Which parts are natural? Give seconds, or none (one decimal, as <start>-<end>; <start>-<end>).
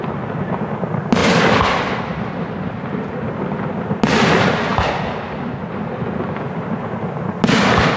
0.0-8.0